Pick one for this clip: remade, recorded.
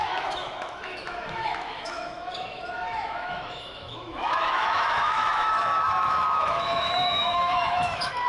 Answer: remade